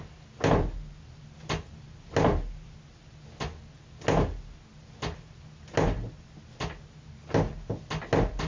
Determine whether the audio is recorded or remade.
recorded